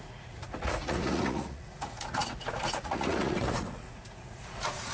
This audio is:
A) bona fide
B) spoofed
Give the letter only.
B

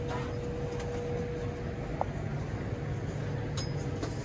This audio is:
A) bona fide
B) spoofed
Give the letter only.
A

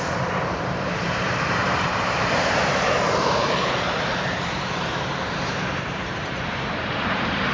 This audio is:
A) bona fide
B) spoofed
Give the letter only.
B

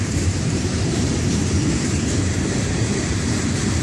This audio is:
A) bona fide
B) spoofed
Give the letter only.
B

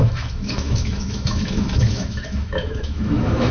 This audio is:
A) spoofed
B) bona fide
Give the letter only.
A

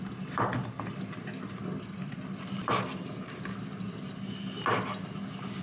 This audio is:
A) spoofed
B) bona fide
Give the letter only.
B